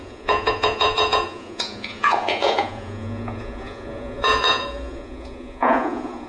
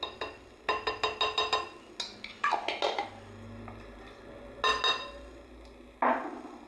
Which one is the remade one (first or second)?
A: first